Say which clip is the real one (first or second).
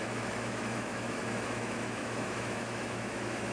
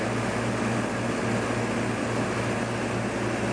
second